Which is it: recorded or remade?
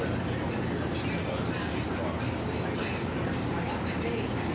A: remade